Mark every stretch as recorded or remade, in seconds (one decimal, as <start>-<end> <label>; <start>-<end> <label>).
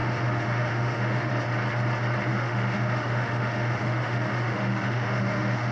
0.0-1.3 remade; 1.3-2.3 recorded; 2.3-5.7 remade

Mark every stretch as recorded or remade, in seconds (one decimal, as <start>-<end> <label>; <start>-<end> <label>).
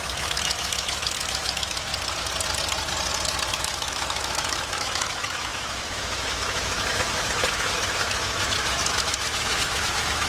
0.0-1.9 remade; 1.9-3.5 recorded; 3.5-10.3 remade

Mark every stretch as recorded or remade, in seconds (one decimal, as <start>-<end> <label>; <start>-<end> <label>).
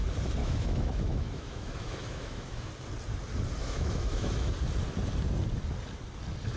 0.0-0.4 recorded; 0.4-2.7 remade; 2.7-3.6 recorded; 3.6-4.5 remade; 4.5-6.6 recorded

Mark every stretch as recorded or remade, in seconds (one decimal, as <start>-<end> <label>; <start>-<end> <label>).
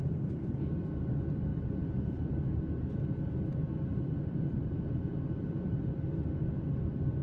0.0-7.2 recorded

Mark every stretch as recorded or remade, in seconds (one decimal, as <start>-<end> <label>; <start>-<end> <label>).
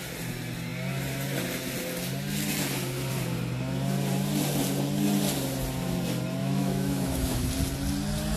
0.0-6.4 recorded; 6.4-7.5 remade; 7.5-8.4 recorded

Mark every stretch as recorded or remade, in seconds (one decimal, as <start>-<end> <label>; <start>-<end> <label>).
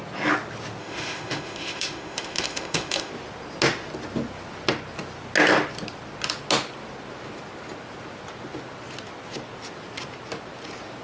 0.0-0.8 recorded; 0.8-3.1 remade; 3.1-11.0 recorded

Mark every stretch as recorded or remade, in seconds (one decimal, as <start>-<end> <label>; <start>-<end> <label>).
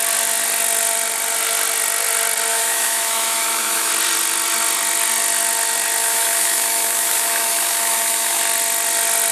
0.0-2.5 recorded; 2.5-3.9 remade; 3.9-6.0 recorded; 6.0-8.4 remade; 8.4-9.3 recorded